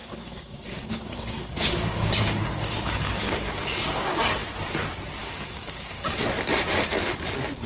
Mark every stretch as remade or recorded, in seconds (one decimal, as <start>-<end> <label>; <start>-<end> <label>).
0.0-4.3 remade; 4.3-5.2 recorded; 5.2-6.2 remade; 6.2-7.7 recorded